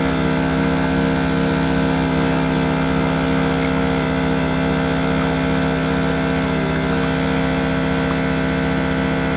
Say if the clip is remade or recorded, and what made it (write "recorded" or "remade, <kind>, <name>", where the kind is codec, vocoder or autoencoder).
recorded